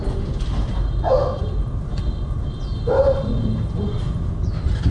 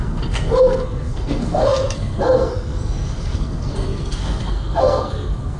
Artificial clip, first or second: second